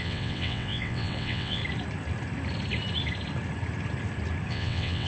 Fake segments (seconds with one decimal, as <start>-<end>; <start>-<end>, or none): 0.0-1.6; 4.5-5.1